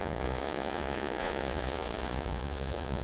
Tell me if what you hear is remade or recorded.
remade